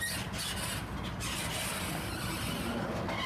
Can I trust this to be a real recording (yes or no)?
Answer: yes